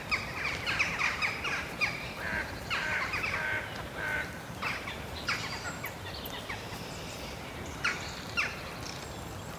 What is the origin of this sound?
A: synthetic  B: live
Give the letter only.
A